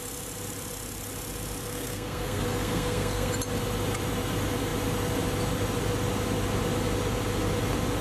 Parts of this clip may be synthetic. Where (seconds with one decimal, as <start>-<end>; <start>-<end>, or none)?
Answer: 1.7-3.3